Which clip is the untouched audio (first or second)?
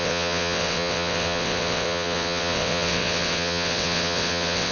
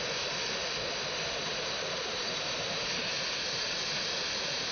second